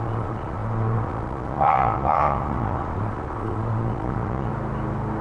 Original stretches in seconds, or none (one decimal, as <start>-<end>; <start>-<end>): 4.5-5.2